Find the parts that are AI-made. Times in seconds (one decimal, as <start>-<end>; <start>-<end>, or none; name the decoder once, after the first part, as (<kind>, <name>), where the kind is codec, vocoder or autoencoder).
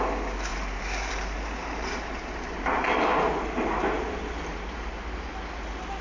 0.5-1.1 (vocoder, BigVGAN v2); 1.6-5.2